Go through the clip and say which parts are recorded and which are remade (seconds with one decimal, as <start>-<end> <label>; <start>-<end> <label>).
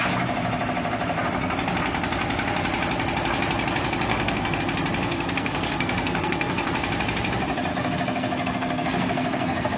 0.0-4.1 recorded; 4.1-4.6 remade; 4.6-5.1 recorded; 5.1-6.7 remade; 6.7-7.7 recorded; 7.7-9.8 remade